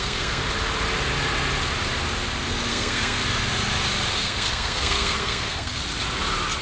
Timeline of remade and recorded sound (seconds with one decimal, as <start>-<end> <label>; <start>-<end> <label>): 0.0-0.4 remade; 0.4-2.7 recorded; 2.7-3.2 remade; 3.2-4.1 recorded; 4.1-5.8 remade; 5.8-6.6 recorded